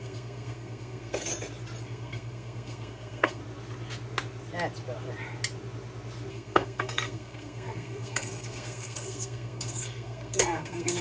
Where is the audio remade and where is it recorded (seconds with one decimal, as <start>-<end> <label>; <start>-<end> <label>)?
0.0-1.3 remade; 1.3-1.8 recorded; 1.8-3.4 remade; 3.4-6.3 recorded; 6.3-11.0 remade